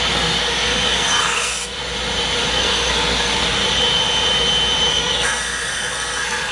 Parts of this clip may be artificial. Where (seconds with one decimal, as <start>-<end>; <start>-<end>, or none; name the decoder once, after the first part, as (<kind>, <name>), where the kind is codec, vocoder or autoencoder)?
0.0-1.8 (codec, SNAC); 2.5-3.6; 4.9-6.5